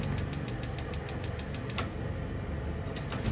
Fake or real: real